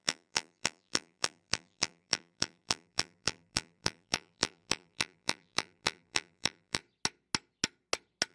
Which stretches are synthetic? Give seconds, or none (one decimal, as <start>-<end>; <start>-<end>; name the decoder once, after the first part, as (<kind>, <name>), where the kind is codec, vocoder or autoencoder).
0.0-6.8 (vocoder, BigVGAN v2)